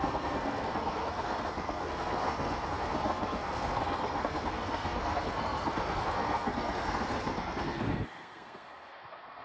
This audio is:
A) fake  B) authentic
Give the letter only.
A